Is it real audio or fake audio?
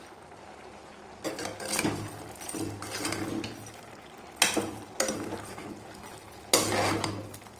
real